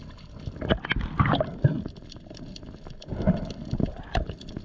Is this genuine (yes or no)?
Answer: yes